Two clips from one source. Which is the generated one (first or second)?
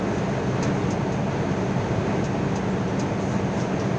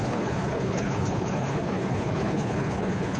second